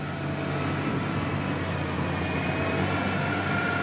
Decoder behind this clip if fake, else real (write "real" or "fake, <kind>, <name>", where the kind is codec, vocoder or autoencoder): real